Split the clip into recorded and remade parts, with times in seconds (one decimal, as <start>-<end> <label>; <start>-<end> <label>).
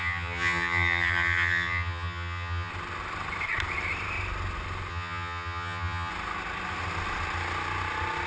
0.0-2.7 remade; 2.7-4.9 recorded; 4.9-6.1 remade; 6.1-8.3 recorded